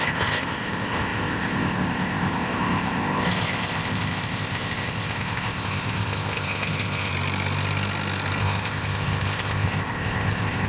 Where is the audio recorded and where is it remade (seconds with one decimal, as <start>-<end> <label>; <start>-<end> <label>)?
0.0-7.1 remade; 7.1-8.4 recorded; 8.4-10.7 remade